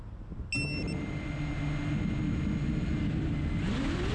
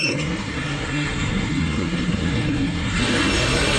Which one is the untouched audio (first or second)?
first